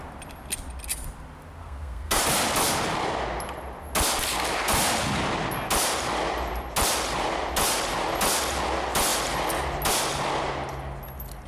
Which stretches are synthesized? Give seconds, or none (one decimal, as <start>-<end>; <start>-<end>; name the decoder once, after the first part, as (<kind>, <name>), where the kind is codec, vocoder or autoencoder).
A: 1.6-2.2 (codec, SNAC)